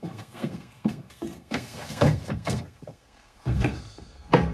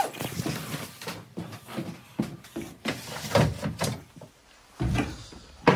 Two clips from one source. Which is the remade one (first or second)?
first